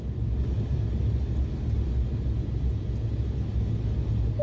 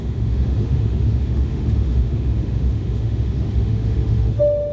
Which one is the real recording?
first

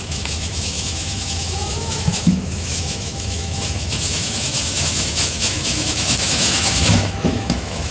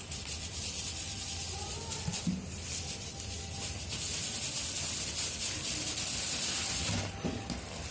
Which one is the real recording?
second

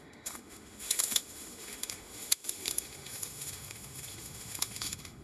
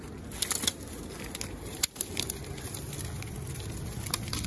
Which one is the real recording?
second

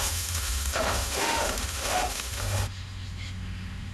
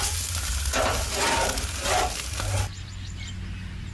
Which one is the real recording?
second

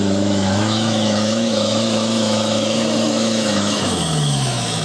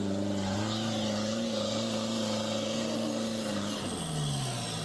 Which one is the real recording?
second